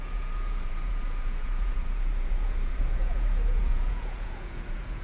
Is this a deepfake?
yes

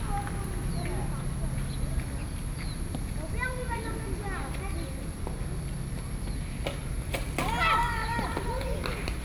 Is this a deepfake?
no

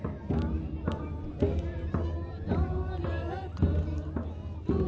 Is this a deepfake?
no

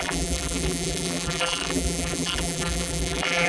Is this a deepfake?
yes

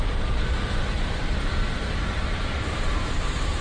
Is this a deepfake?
yes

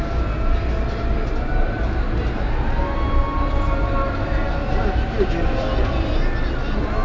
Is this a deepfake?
no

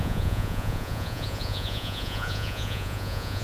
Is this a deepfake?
yes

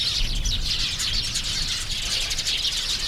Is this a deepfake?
no